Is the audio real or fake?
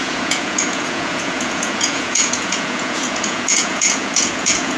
fake